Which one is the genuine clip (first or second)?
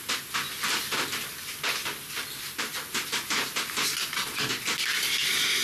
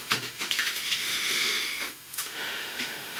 first